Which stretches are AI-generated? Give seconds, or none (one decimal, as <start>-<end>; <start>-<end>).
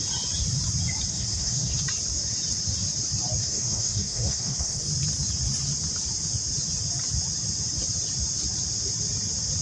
1.1-1.8; 3.4-4.8